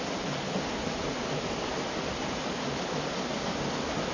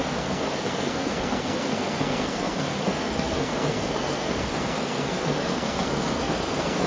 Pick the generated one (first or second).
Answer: second